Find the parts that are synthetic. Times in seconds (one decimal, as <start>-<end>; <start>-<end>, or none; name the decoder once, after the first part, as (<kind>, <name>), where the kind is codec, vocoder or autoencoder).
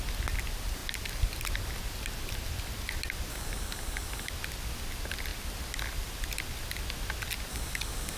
3.3-4.3 (codec, DAC); 7.5-8.2